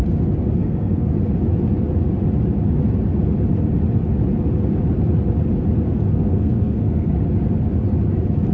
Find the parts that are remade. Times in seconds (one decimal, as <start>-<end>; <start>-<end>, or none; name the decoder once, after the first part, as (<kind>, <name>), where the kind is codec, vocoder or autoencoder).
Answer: 0.6-1.1 (codec, SNAC); 6.1-7.1